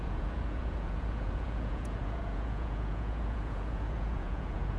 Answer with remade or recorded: remade